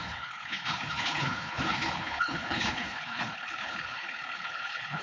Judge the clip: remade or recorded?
remade